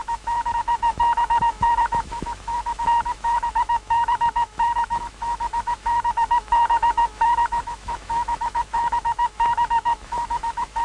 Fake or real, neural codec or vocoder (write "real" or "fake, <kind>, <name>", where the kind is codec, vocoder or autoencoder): fake, autoencoder, DAC-VAE